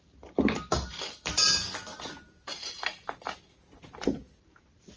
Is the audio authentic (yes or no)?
yes